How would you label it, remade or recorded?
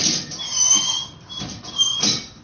recorded